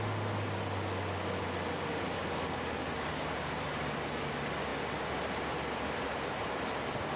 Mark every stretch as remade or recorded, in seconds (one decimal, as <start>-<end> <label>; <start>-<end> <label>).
0.0-7.2 recorded